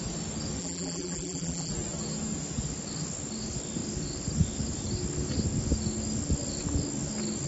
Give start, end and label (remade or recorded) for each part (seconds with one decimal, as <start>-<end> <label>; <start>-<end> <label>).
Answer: 0.0-0.6 recorded; 0.6-1.7 remade; 1.7-7.5 recorded